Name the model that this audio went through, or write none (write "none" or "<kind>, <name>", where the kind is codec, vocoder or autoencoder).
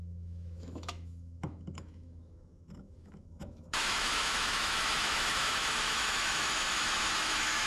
autoencoder, DAC-VAE